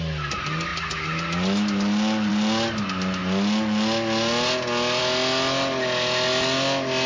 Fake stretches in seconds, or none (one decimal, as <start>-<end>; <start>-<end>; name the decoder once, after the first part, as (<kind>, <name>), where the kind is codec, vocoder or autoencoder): none